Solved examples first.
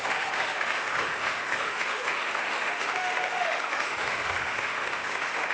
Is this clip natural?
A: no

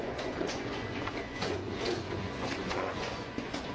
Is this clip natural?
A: no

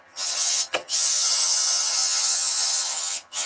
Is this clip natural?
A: no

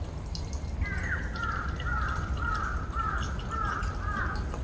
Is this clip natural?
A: yes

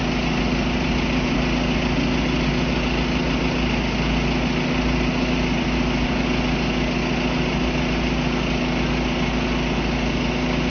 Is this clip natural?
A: yes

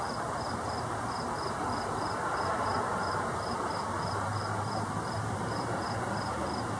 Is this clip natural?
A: no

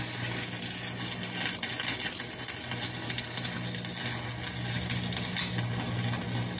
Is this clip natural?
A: yes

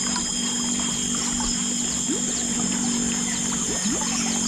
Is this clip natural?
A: yes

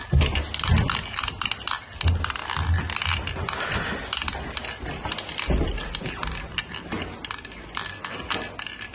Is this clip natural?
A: yes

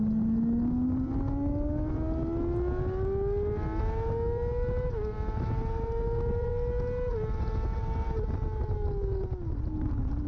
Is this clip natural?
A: yes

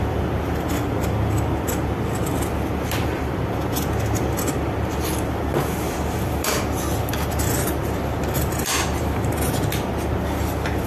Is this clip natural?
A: yes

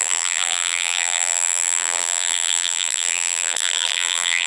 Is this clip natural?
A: no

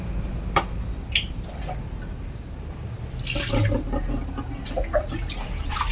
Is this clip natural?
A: yes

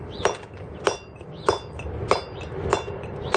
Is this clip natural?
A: no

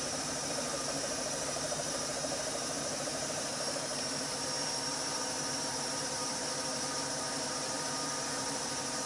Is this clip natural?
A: no